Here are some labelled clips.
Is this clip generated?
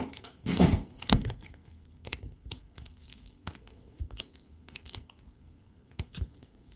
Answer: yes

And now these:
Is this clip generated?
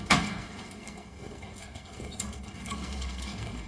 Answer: yes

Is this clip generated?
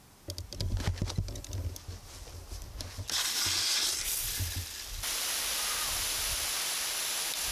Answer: no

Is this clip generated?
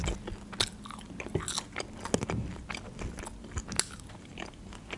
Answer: no